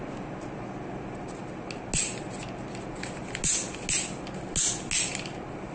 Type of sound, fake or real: real